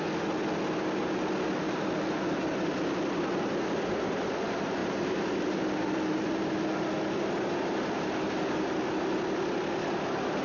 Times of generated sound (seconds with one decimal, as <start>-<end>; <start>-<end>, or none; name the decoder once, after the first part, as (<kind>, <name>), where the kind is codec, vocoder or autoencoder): 4.8-6.5 (vocoder, BigVGAN v2)